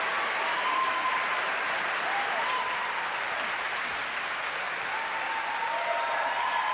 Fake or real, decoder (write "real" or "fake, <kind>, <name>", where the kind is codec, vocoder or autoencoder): real